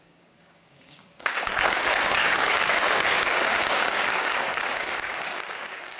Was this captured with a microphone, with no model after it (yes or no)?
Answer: no